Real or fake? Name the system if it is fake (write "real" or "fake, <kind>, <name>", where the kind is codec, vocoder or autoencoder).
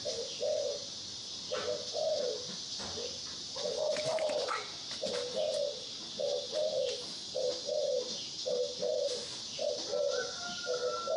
real